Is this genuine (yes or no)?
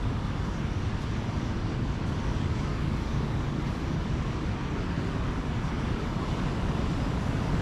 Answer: no